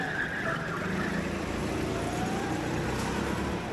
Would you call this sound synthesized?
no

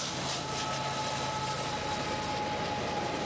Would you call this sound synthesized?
no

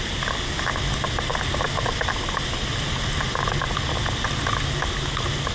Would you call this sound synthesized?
no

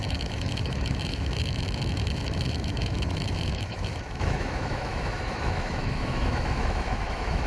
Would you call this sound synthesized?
yes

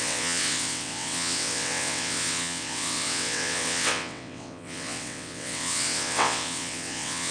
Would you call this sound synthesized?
yes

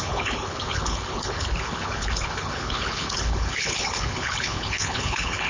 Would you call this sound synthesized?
yes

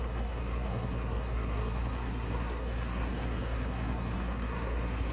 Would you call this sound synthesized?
yes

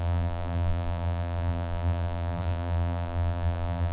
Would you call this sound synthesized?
yes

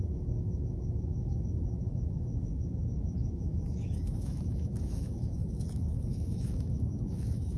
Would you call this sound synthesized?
yes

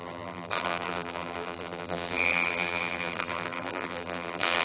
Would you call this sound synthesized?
yes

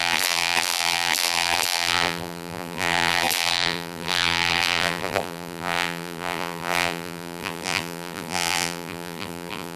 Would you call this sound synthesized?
yes